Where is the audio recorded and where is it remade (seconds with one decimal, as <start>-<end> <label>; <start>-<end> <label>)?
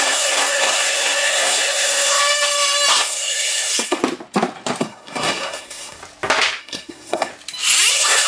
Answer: 0.0-2.2 remade; 2.2-2.9 recorded; 2.9-4.0 remade; 4.0-4.8 recorded; 4.8-6.0 remade; 6.0-6.6 recorded; 6.6-7.3 remade; 7.3-7.9 recorded; 7.9-8.3 remade